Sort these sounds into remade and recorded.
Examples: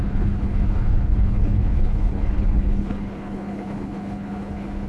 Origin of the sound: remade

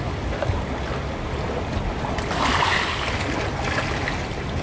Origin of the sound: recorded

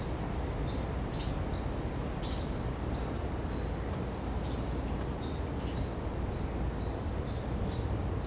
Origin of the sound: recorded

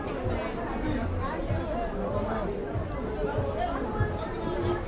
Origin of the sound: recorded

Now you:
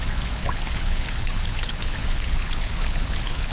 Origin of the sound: remade